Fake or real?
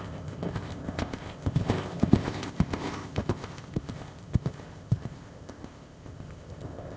fake